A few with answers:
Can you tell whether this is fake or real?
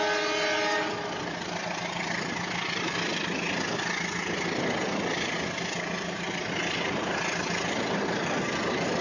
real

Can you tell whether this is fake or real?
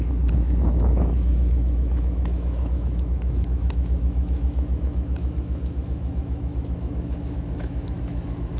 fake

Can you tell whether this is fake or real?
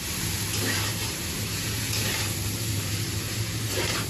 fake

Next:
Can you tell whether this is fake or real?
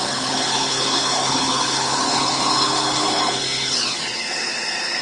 fake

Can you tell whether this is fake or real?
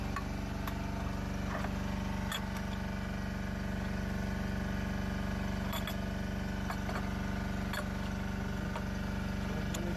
real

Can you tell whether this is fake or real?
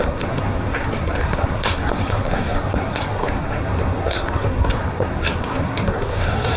fake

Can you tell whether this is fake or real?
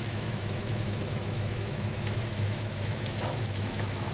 fake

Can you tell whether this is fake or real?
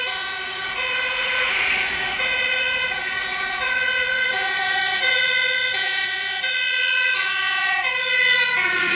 fake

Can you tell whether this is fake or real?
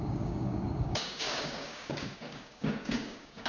fake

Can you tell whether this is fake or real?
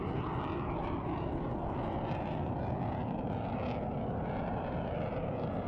real